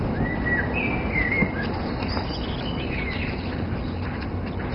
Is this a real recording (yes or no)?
yes